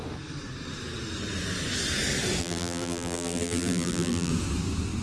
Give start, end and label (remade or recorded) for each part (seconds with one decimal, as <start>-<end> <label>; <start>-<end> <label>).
0.0-2.4 recorded; 2.4-4.3 remade; 4.3-5.0 recorded